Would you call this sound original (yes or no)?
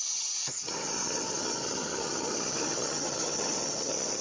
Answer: no